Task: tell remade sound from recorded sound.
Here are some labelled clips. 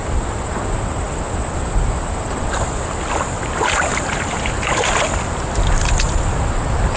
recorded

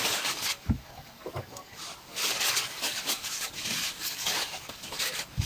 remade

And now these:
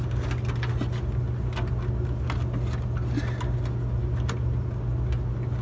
recorded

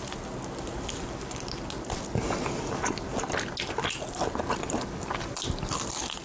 recorded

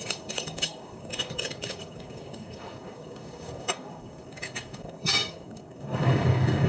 remade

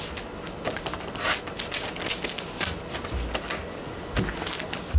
recorded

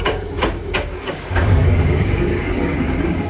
remade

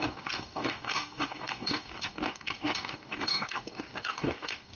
remade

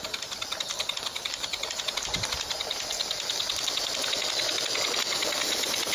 recorded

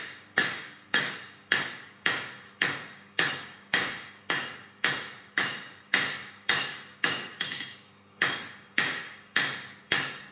remade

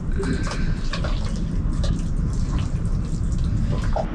recorded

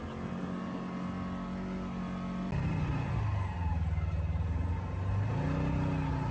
recorded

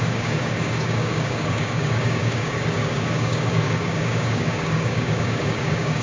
remade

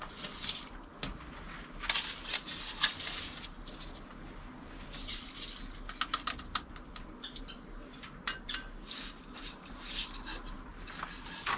recorded